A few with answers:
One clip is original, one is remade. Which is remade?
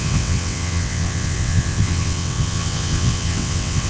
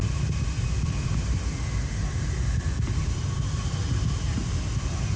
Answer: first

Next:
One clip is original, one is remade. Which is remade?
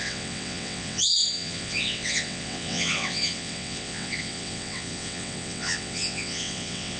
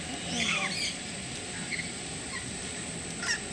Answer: first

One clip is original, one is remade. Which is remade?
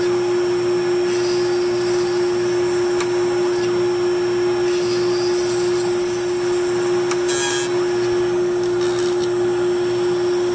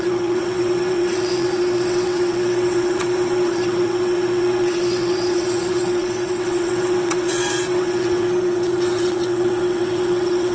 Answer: second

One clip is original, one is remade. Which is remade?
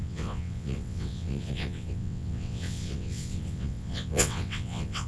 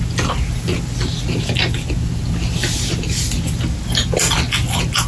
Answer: first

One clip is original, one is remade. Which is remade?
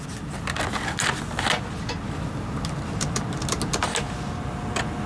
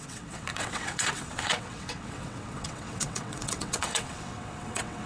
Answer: second